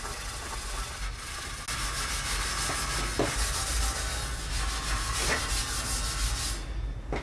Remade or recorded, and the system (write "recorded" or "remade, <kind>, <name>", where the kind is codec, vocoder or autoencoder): recorded